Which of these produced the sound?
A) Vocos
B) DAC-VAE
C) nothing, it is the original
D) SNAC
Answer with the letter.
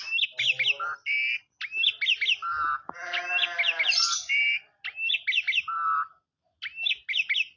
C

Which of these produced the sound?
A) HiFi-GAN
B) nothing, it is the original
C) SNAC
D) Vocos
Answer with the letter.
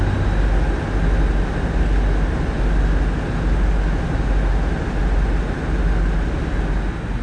B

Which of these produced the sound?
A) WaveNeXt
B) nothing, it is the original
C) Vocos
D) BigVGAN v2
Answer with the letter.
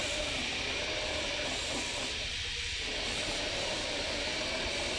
B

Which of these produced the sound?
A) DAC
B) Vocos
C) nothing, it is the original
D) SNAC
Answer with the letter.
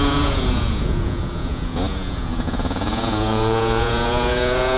B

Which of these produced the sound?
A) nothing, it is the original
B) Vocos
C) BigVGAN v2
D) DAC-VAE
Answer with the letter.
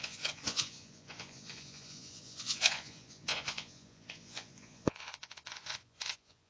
B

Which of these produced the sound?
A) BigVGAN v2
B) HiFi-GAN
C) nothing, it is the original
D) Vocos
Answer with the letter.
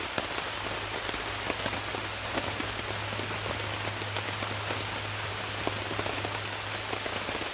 C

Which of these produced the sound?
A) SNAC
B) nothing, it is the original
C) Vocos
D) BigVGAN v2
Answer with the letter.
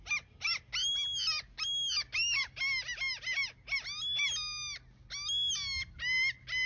B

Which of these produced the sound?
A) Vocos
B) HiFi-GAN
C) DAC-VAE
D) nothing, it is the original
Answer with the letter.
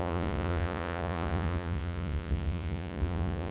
A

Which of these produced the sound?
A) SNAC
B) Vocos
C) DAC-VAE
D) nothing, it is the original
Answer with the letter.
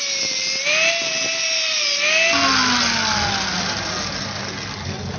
D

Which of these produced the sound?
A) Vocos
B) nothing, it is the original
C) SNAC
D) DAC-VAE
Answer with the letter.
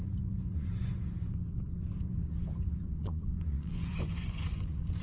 A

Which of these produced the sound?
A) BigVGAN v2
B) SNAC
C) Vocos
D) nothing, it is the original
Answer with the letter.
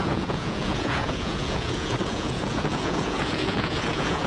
C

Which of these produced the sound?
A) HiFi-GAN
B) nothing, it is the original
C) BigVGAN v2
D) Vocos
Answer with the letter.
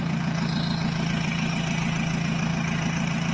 B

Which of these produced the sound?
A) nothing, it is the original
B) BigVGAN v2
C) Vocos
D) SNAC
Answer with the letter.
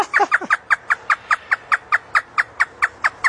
A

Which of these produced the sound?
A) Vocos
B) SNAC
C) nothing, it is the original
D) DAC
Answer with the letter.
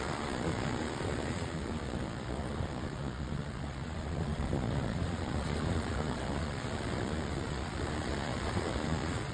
A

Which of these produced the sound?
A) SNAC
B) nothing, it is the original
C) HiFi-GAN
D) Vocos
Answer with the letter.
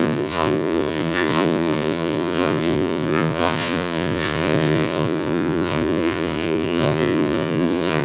D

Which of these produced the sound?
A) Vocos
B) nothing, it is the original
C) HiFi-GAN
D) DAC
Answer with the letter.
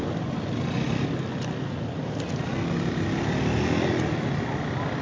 B